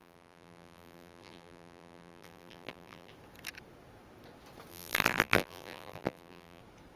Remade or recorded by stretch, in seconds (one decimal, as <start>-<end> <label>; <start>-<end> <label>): 0.0-3.1 remade; 3.1-4.7 recorded; 4.7-6.6 remade; 6.6-7.0 recorded